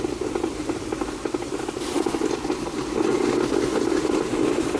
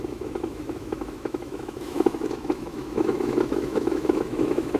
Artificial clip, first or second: second